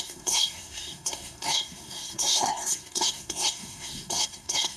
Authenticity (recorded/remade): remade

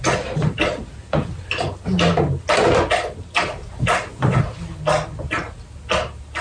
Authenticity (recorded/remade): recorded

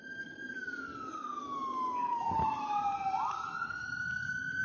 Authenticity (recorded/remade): recorded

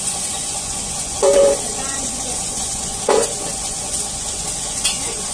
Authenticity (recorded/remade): remade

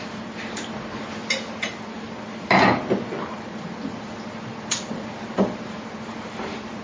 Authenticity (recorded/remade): recorded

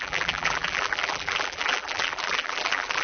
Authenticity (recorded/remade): remade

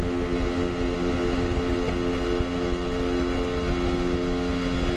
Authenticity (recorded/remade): recorded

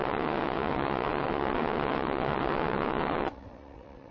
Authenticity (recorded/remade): remade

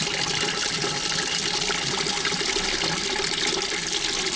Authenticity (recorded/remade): recorded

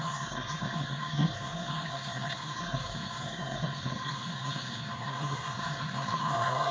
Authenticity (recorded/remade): remade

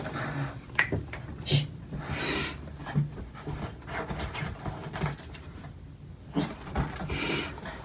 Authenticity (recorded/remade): recorded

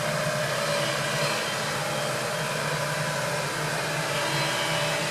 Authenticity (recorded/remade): recorded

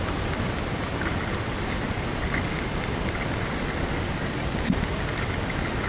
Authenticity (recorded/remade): recorded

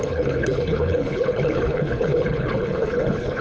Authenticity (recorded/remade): remade